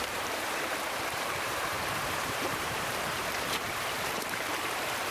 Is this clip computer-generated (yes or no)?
yes